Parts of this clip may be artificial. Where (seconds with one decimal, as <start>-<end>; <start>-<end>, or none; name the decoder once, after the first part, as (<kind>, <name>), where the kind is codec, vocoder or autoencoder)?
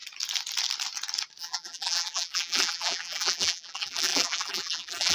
1.4-5.1 (vocoder, BigVGAN v2)